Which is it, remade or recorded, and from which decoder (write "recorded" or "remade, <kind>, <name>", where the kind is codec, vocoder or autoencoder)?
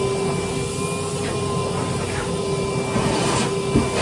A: recorded